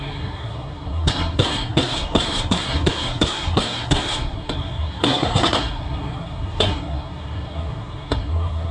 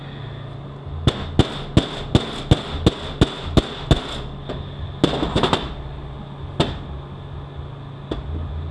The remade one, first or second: first